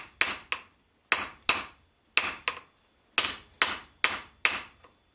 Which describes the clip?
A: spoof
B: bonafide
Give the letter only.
B